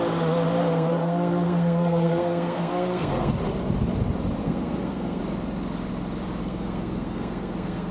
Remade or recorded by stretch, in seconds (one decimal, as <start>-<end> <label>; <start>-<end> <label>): 0.0-0.6 recorded; 0.6-3.3 remade; 3.3-4.4 recorded; 4.4-5.2 remade; 5.2-6.4 recorded; 6.4-7.9 remade